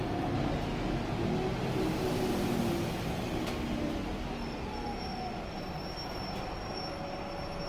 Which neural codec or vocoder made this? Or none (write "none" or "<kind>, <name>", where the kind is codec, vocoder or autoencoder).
none